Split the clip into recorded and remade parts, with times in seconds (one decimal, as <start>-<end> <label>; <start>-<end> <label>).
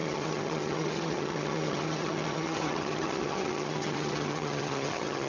0.0-5.3 remade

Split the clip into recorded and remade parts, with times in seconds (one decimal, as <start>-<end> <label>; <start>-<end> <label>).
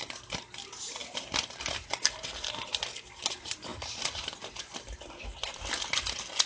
0.0-3.7 recorded; 3.7-5.6 remade; 5.6-6.5 recorded